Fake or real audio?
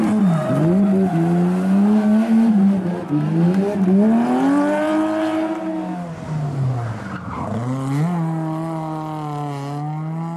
real